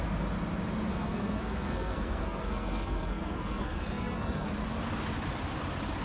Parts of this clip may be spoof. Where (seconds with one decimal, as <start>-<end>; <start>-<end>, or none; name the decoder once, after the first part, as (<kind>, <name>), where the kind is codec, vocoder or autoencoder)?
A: 0.9-4.5 (codec, SNAC)